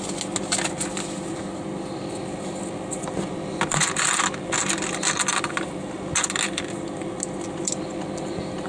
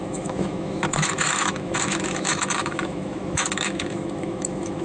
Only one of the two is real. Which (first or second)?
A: first